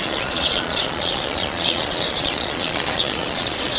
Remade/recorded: remade